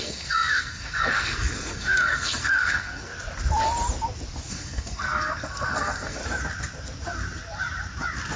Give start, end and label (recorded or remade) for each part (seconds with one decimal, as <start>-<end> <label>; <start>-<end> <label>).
0.0-3.1 remade; 3.1-4.5 recorded; 4.5-6.2 remade; 6.2-8.4 recorded